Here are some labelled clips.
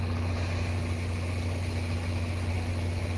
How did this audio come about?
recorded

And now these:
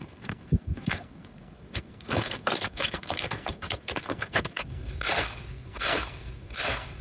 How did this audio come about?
remade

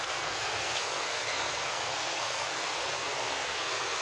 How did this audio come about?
remade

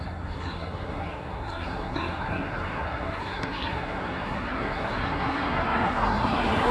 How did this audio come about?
remade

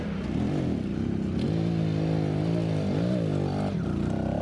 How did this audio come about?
recorded